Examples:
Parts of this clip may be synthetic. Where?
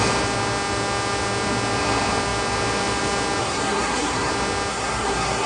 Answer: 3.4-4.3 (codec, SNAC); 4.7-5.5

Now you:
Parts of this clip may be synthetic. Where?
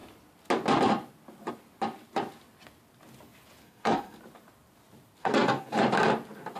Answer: 3.6-4.2 (codec, SNAC); 5.2-5.8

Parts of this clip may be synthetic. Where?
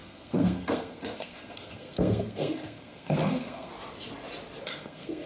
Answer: 0.0-3.7 (codec, SNAC); 4.6-5.3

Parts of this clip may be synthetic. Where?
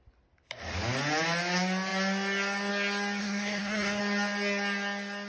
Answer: 3.2-4.0 (codec, SNAC)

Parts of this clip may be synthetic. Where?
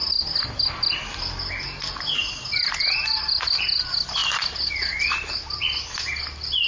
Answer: none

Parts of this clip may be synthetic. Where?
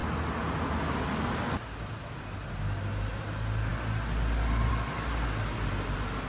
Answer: none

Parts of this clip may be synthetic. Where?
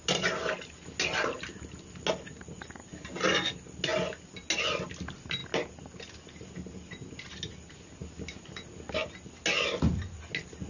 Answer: none